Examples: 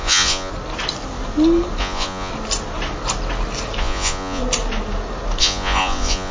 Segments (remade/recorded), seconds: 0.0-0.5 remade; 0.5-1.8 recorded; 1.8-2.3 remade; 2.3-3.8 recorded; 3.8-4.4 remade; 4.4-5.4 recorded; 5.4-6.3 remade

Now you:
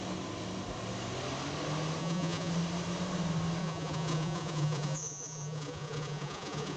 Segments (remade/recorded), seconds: 0.0-2.0 recorded; 2.0-2.5 remade; 2.5-3.6 recorded; 3.6-6.8 remade

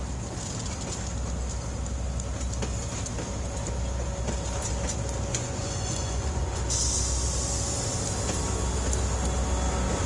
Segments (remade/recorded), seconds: 0.0-5.3 recorded; 5.3-6.6 remade; 6.6-10.1 recorded

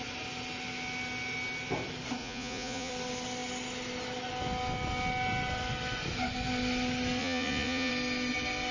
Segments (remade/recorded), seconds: 0.0-2.2 recorded; 2.2-2.9 remade; 2.9-7.2 recorded; 7.2-7.9 remade; 7.9-8.7 recorded

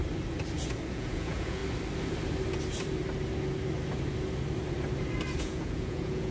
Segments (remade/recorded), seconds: 0.0-0.9 recorded; 0.9-1.6 remade; 1.6-5.4 recorded; 5.4-6.3 remade

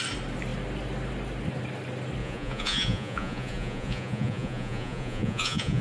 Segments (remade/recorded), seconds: 0.0-2.2 recorded; 2.2-5.8 remade